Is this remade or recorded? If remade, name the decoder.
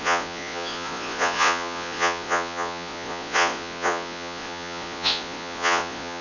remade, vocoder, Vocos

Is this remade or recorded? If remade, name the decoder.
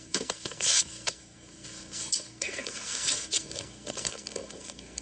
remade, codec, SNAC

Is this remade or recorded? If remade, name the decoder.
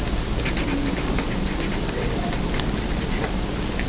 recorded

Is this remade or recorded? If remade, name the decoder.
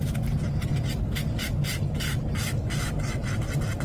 recorded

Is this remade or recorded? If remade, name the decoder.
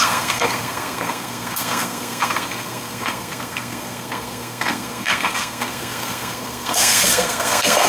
remade, codec, SNAC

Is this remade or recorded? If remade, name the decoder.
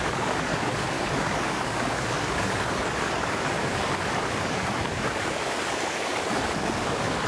remade, codec, DAC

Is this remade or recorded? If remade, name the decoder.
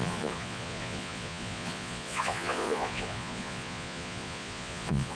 remade, vocoder, Vocos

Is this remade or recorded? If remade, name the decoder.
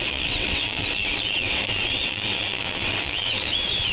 remade, vocoder, WaveNeXt